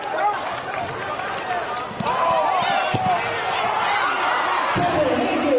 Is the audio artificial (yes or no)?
no